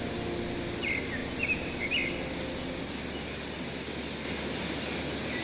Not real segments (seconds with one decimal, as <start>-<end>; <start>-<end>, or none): none